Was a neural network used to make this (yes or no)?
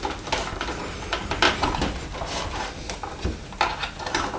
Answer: no